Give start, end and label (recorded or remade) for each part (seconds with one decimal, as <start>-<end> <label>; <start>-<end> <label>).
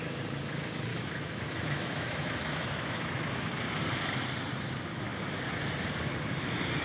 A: 0.0-0.9 recorded; 0.9-3.3 remade; 3.3-6.8 recorded